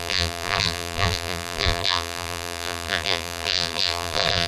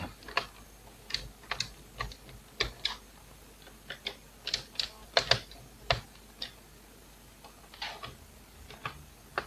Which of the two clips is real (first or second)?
second